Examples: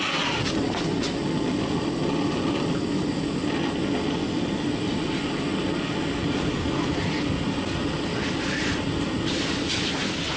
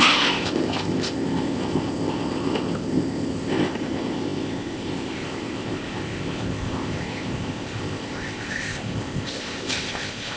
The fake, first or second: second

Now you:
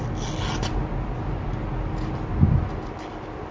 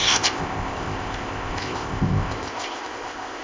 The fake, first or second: second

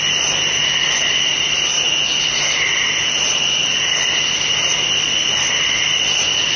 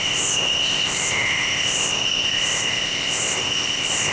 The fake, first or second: second